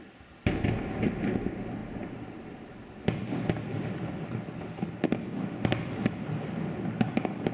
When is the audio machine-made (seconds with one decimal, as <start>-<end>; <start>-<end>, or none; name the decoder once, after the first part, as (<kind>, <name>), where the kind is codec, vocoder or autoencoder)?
none